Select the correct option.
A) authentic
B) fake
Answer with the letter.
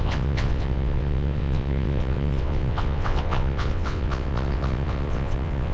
B